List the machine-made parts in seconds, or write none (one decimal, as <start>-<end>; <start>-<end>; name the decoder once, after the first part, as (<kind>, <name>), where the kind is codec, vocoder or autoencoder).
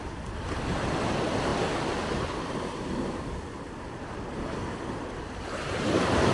none